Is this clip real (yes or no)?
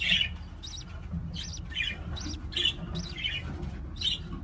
yes